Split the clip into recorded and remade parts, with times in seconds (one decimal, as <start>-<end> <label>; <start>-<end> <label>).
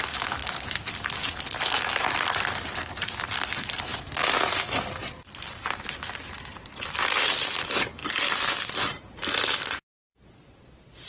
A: 0.0-8.0 recorded; 8.0-8.7 remade; 8.7-11.1 recorded